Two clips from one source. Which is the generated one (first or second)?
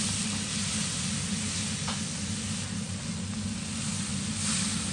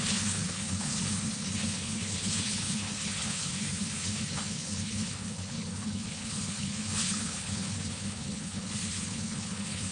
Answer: second